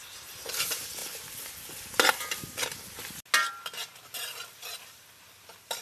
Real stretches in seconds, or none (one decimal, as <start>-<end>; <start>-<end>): 0.0-5.8